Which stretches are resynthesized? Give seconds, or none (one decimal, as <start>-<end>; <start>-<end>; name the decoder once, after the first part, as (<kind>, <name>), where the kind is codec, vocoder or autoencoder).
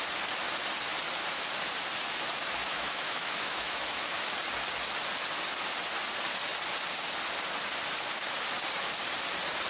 2.6-4.3 (autoencoder, DAC-VAE)